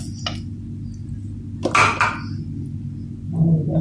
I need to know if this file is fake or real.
real